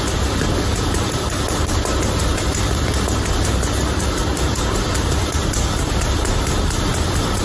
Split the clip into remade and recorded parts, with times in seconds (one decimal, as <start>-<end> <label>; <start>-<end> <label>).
0.0-2.3 recorded; 2.3-6.3 remade; 6.3-6.9 recorded; 6.9-7.4 remade